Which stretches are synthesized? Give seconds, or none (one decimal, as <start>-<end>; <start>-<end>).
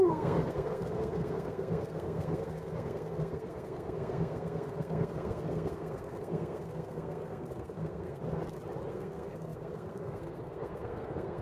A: 0.0-8.2; 8.9-11.4